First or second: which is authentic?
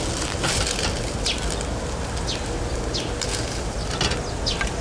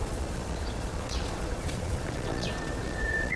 first